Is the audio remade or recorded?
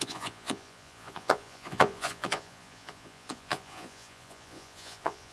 remade